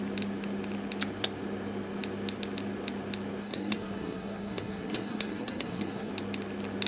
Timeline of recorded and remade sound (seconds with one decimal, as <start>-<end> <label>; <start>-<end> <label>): 0.0-3.4 recorded; 3.4-6.1 remade; 6.1-6.9 recorded